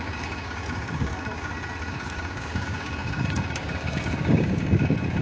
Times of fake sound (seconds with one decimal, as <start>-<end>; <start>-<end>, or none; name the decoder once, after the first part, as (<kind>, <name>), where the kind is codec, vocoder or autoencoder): 0.0-1.5 (codec, DAC); 2.0-5.2